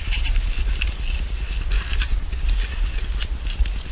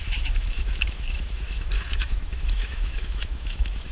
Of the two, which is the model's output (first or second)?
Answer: second